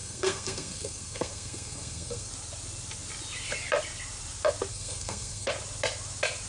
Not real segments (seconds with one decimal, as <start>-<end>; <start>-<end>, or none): 0.0-2.3; 4.7-5.5